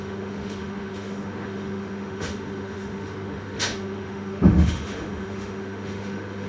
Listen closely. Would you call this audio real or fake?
fake